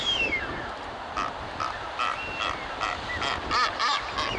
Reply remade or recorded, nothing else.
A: recorded